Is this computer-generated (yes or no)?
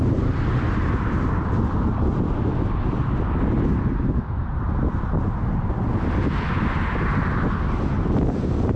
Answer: no